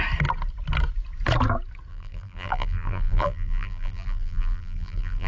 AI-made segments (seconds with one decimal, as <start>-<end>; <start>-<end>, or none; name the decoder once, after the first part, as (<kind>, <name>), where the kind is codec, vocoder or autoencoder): 1.9-5.3 (vocoder, BigVGAN v2)